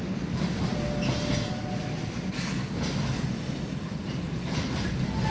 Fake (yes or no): no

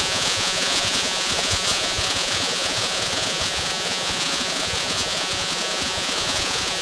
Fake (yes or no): yes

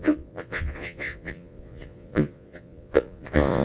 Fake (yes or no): yes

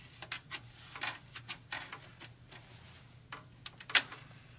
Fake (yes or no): no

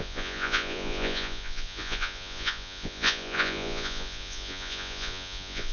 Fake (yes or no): yes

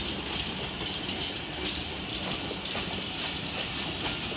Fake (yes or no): no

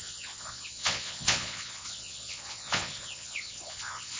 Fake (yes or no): yes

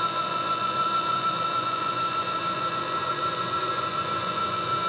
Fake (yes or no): yes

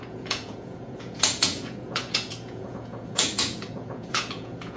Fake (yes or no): yes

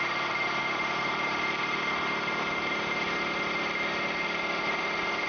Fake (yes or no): no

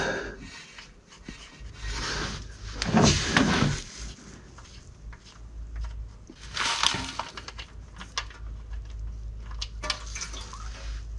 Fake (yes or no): no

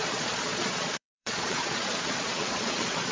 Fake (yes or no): yes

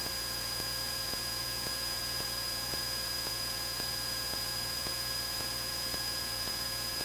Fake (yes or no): yes